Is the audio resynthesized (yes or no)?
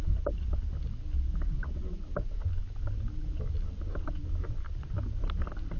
no